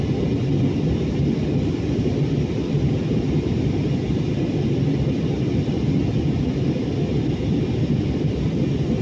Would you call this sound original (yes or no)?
yes